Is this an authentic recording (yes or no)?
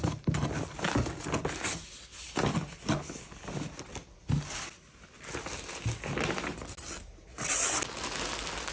yes